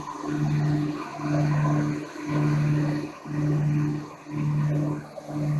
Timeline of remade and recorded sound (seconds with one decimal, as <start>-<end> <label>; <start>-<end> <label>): 0.0-5.6 recorded